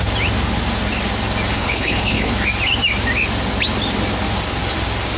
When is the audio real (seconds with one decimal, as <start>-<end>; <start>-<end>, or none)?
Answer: 0.0-1.5; 2.3-5.2